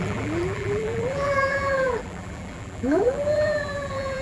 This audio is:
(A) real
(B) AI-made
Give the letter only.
B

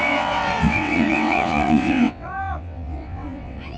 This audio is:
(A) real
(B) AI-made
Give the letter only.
B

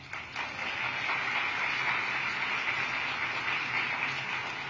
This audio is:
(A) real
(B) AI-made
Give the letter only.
A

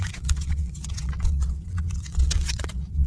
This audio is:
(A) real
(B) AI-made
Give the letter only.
B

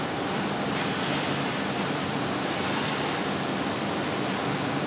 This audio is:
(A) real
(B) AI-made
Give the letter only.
A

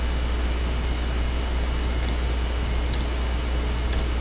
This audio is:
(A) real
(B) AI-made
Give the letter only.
A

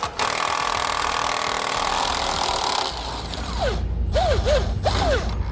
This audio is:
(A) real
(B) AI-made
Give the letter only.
B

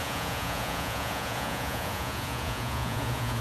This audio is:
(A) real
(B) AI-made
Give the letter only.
B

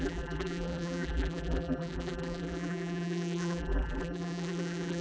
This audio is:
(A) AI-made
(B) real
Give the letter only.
A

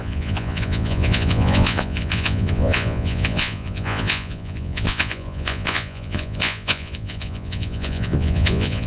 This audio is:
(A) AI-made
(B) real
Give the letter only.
A